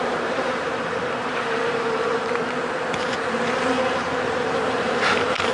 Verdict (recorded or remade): remade